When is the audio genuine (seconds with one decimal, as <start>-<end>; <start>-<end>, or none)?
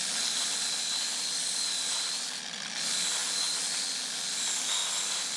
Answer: 0.0-5.4